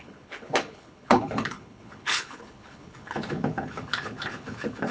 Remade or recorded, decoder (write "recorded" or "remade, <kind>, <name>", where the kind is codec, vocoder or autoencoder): remade, codec, HILCodec